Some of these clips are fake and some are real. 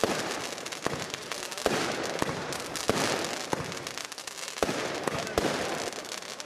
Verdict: real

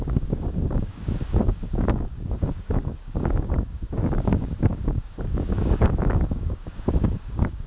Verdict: fake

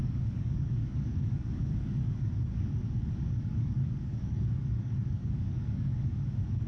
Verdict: fake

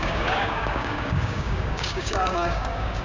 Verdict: fake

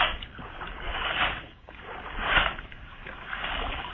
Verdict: fake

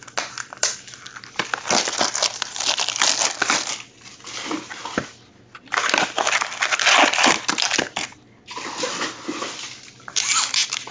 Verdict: real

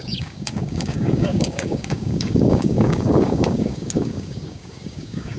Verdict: fake